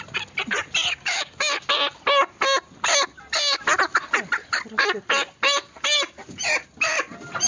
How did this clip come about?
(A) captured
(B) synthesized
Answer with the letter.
A